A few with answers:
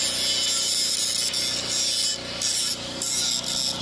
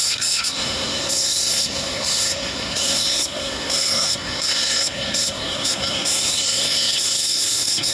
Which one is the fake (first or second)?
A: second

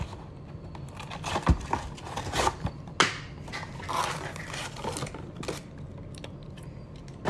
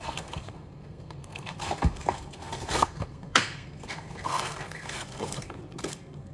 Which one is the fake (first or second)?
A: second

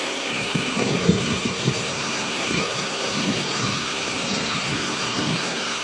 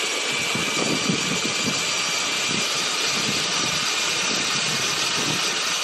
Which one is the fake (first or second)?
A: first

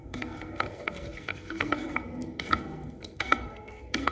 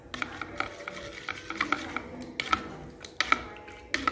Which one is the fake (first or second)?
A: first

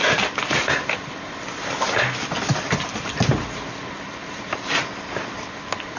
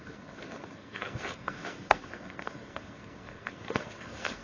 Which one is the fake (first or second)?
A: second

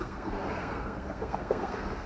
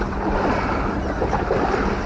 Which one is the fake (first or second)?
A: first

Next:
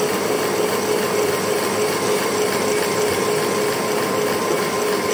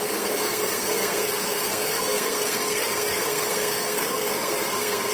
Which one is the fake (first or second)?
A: second